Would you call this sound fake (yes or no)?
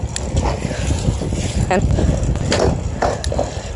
no